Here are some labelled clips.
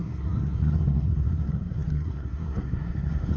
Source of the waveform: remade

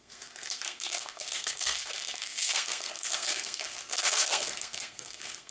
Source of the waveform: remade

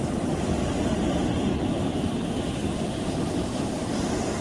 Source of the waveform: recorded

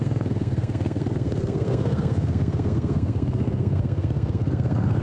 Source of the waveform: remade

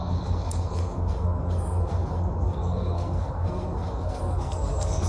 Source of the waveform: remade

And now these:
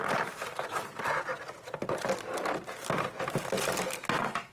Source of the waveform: recorded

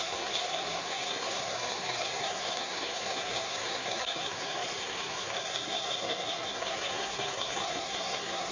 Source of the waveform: remade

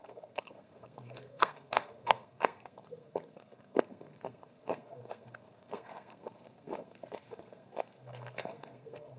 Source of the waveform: remade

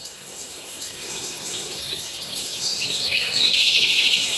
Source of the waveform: remade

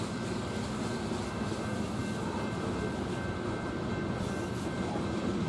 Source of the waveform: recorded